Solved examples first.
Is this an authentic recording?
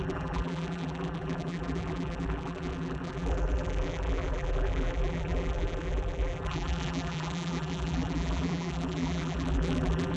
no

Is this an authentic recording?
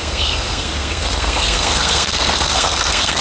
no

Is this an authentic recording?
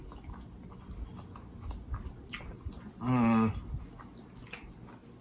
yes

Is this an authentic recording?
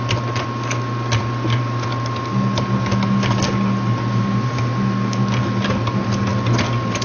yes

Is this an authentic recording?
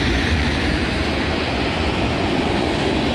no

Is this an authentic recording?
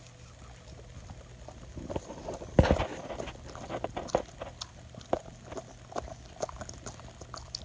yes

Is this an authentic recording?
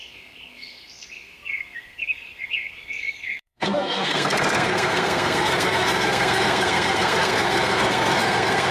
no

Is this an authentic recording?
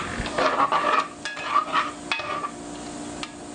yes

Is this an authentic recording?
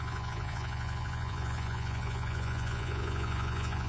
no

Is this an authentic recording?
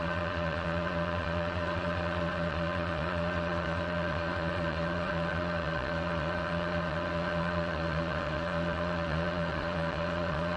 no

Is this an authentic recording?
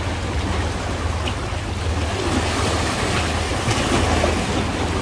yes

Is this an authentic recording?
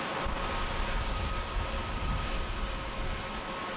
yes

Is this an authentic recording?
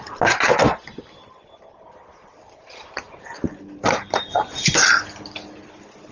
yes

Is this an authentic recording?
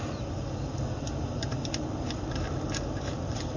yes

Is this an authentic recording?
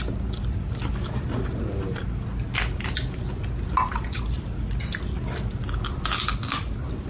yes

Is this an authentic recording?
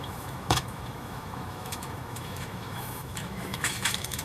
no